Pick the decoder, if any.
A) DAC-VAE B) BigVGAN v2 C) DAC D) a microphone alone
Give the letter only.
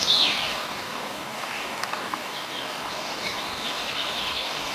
C